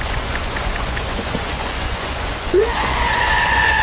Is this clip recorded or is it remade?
remade